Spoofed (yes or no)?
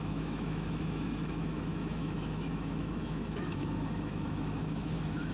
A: yes